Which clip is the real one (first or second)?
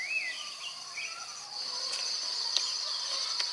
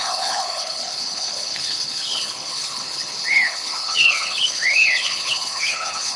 first